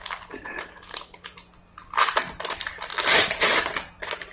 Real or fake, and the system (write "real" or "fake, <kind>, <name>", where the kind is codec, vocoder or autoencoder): real